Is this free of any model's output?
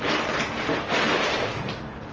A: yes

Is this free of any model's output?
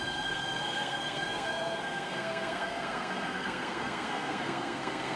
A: no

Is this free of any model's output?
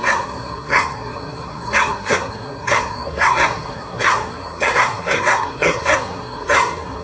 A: no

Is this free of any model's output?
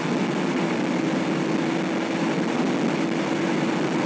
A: yes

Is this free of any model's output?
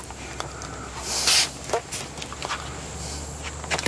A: yes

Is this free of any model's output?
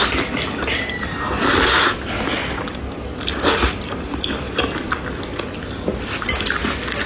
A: yes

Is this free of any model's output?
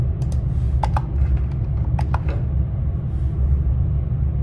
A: yes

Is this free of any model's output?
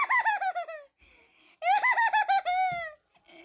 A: yes